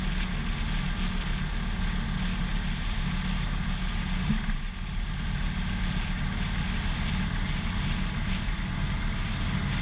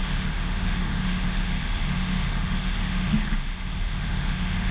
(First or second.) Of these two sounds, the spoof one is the second